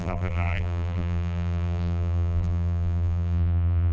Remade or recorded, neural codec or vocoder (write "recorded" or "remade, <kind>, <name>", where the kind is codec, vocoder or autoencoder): remade, vocoder, BigVGAN v2